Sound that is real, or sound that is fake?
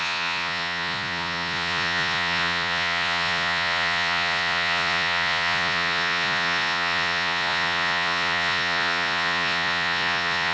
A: fake